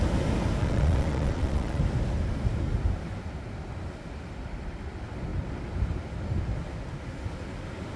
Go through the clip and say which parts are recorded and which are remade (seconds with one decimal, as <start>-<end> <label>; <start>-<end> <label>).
0.0-0.6 recorded; 0.6-1.8 remade; 1.8-8.0 recorded